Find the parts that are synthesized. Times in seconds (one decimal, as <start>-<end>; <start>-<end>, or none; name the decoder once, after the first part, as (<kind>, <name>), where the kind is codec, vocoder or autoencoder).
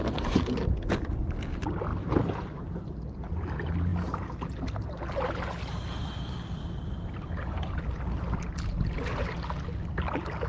1.9-3.3 (vocoder, BigVGAN v2); 6.0-7.8